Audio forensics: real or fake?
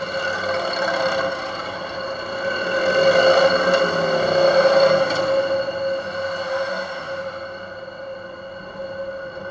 real